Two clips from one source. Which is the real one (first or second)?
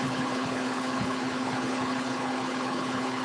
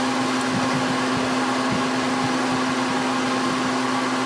second